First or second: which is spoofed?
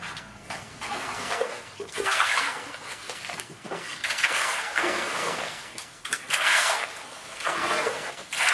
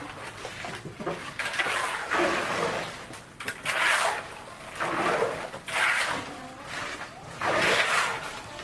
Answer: first